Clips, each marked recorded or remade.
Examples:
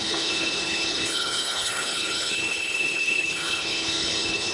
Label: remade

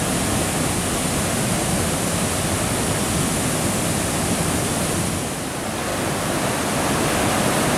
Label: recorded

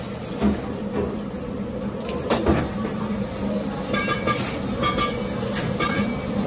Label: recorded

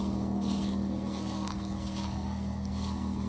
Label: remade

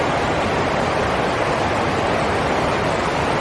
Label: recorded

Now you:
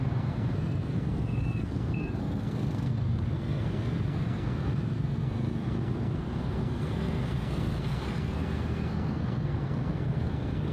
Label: remade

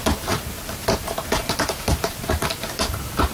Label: remade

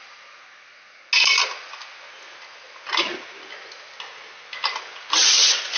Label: recorded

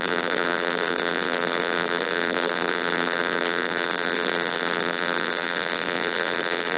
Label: remade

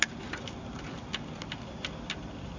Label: recorded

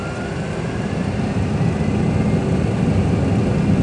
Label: recorded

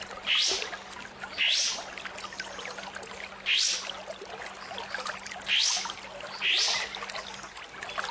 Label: recorded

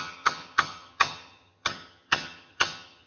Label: remade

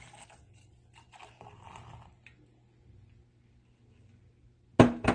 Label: recorded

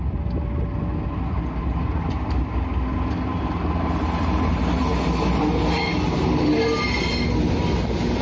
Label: recorded